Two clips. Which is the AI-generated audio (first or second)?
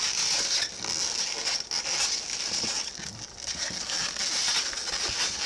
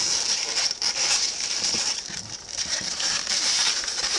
second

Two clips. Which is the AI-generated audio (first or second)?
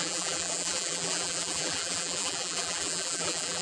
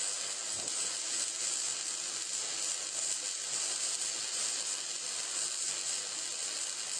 first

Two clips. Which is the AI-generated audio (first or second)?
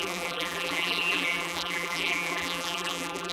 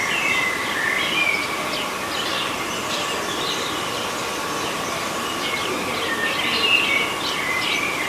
first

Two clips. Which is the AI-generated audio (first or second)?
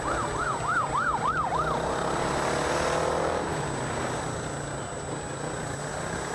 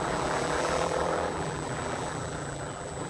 second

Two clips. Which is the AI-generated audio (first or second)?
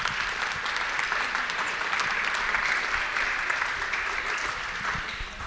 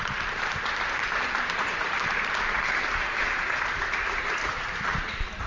second